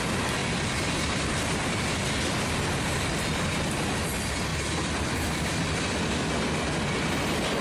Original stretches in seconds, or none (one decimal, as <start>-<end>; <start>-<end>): 0.0-0.4; 1.4-4.5; 5.5-7.6